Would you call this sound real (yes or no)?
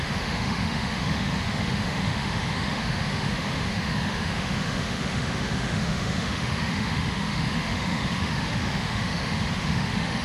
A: no